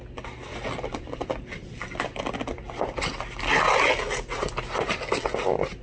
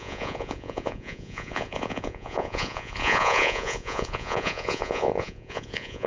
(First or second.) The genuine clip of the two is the first